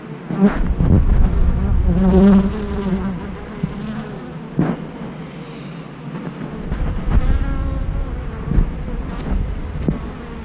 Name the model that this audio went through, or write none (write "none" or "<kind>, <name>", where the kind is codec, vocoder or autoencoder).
none